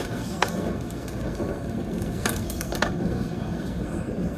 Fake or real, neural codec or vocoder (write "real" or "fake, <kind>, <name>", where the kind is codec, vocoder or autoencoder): fake, codec, SNAC